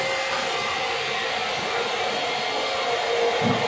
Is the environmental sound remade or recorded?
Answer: recorded